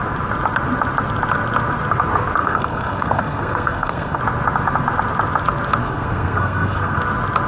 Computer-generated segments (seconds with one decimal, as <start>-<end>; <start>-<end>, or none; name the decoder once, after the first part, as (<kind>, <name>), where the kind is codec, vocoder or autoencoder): 2.4-4.2 (codec, SNAC); 5.8-7.0